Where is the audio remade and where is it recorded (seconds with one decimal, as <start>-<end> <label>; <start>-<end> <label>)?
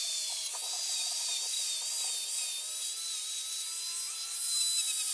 0.0-1.9 remade; 1.9-5.1 recorded